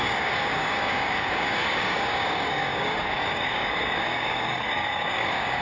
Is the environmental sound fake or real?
fake